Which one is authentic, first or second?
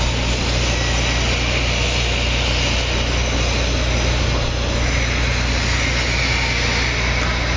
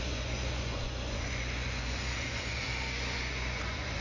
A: first